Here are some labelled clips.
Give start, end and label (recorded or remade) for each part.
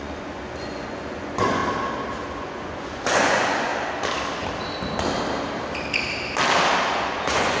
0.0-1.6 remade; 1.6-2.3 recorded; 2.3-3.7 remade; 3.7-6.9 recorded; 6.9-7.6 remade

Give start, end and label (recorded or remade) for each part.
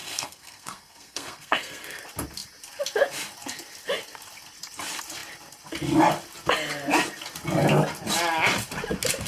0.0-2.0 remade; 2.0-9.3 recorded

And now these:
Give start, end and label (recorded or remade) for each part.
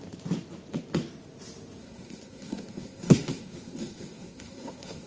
0.0-1.8 recorded; 1.8-5.1 remade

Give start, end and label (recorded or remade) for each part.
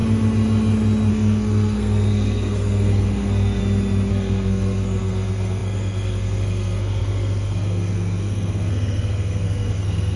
0.0-1.1 recorded; 1.1-3.6 remade; 3.6-4.1 recorded; 4.1-10.2 remade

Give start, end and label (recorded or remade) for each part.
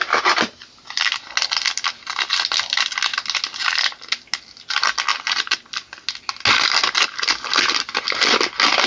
0.0-8.9 recorded